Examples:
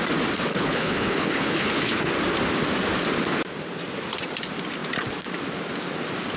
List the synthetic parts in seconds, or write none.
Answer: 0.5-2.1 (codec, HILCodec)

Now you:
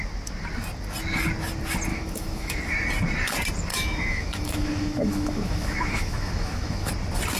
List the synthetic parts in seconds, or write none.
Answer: 1.9-2.6 (autoencoder, DAC-VAE); 3.7-6.9

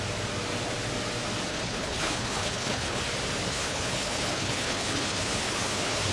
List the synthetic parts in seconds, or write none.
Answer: 1.5-3.0 (codec, HILCodec); 3.5-6.1

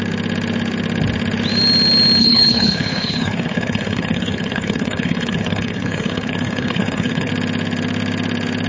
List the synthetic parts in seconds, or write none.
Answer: 2.2-7.3 (codec, HILCodec)

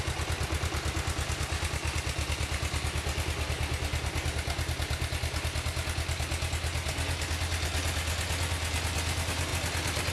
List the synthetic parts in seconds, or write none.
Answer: none

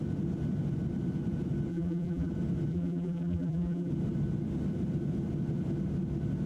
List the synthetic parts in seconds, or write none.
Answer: 1.7-2.3 (vocoder, BigVGAN v2); 2.7-3.9

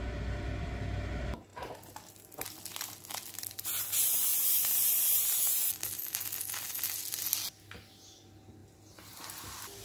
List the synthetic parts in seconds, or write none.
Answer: none

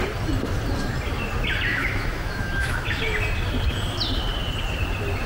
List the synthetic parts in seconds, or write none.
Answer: 1.7-3.0 (autoencoder, DAC-VAE)